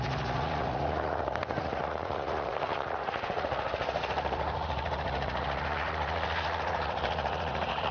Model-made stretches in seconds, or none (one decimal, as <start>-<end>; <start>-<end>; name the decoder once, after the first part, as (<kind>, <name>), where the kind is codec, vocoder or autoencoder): 0.0-7.9 (vocoder, Vocos)